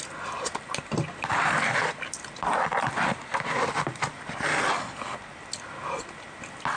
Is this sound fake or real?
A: real